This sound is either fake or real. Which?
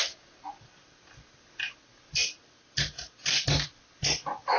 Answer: real